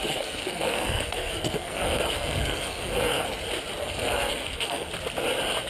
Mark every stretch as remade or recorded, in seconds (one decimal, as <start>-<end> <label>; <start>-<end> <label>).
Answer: 0.0-3.4 remade; 3.4-3.8 recorded; 3.8-4.9 remade; 4.9-5.7 recorded